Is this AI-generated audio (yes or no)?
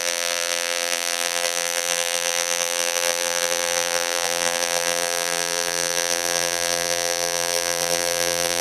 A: yes